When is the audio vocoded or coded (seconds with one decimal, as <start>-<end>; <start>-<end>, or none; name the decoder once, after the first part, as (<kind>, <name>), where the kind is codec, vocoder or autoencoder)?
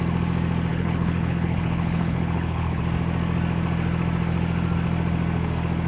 0.7-2.8 (codec, HILCodec)